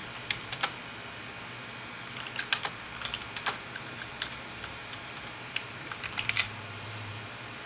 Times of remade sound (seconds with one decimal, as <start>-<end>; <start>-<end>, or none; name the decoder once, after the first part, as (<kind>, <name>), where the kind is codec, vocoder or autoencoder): 3.4-7.7 (vocoder, BigVGAN v2)